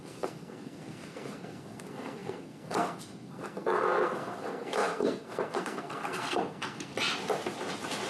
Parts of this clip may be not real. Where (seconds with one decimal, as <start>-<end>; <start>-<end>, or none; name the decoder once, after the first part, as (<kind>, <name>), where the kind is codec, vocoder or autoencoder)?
0.0-6.9 (codec, SNAC)